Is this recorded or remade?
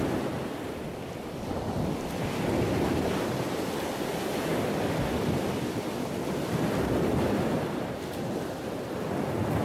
recorded